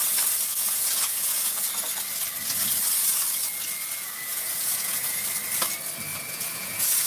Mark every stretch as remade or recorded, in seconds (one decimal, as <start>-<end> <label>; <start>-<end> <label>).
0.0-0.5 recorded; 0.5-1.6 remade; 1.6-4.3 recorded; 4.3-5.2 remade; 5.2-6.1 recorded; 6.1-7.1 remade